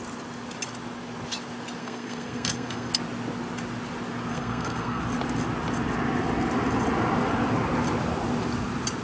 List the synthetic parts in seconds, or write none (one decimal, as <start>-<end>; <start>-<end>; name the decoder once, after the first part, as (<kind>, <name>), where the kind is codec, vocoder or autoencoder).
1.8-2.9 (codec, SNAC); 4.3-5.0